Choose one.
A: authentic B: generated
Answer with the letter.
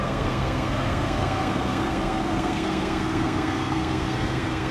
B